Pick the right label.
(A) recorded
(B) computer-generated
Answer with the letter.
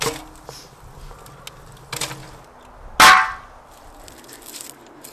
A